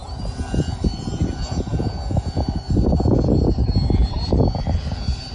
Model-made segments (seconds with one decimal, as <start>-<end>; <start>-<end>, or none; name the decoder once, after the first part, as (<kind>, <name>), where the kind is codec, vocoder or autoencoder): 0.0-3.2 (vocoder, BigVGAN v2); 4.0-5.3